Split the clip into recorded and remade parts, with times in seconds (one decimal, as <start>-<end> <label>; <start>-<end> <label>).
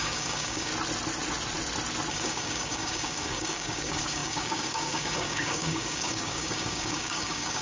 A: 0.0-0.7 remade; 0.7-2.1 recorded; 2.1-7.6 remade